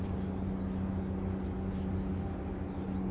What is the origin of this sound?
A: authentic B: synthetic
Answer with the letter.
A